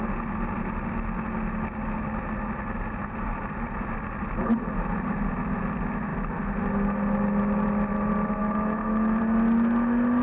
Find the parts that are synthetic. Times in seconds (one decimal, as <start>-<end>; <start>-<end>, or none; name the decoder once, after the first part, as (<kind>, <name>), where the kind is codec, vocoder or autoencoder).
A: 8.4-9.2 (autoencoder, DAC-VAE)